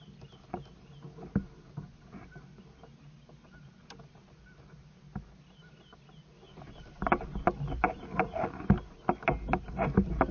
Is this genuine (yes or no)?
yes